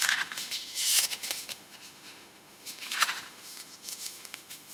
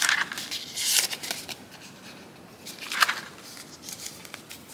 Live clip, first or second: second